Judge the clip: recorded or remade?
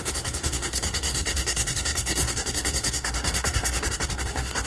remade